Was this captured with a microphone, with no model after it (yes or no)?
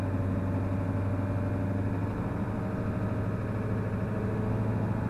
yes